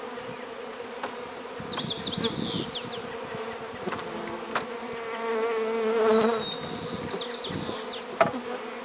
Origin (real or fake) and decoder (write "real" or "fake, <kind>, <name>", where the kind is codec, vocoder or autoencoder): real